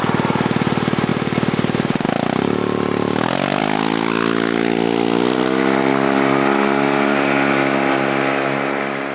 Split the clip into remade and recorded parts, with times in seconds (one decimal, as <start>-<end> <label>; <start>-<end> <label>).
0.0-9.1 recorded

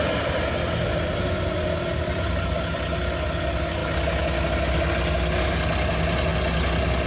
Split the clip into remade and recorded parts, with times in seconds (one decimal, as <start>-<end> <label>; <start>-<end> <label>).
0.0-7.1 recorded

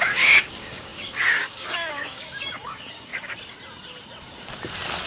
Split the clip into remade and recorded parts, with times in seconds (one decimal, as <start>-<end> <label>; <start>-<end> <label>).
0.0-3.1 remade; 3.1-5.1 recorded